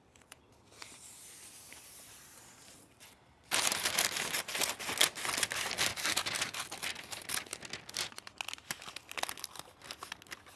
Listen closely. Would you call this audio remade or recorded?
recorded